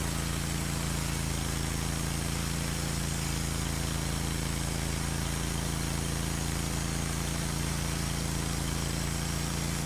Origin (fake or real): real